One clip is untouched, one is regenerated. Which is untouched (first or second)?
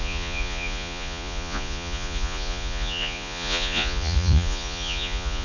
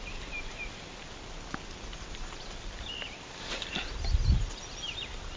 second